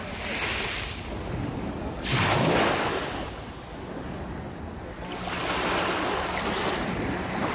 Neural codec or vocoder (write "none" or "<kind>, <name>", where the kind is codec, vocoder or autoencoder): none